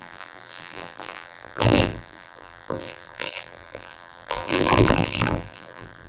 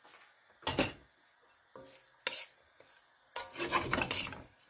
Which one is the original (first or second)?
second